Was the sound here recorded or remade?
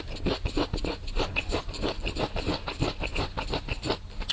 recorded